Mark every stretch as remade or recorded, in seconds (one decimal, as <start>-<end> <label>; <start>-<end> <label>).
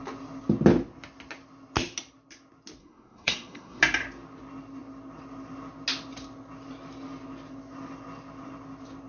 0.0-2.8 recorded; 2.8-3.8 remade; 3.8-9.1 recorded